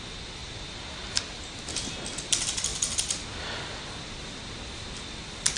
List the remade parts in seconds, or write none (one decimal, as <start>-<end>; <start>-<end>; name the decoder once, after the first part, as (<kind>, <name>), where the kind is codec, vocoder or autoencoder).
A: none